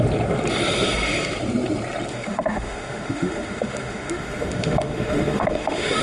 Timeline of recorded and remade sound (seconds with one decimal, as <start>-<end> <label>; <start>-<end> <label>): 0.0-2.1 recorded; 2.1-6.0 remade